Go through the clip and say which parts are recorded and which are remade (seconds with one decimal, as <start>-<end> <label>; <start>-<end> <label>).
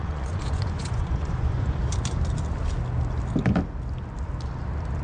0.0-1.8 remade; 1.8-5.0 recorded